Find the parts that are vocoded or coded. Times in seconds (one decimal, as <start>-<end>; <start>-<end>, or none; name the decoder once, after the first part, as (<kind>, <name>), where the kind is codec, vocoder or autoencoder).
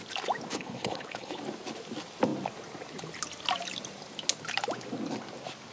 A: 0.5-1.4 (codec, HILCodec)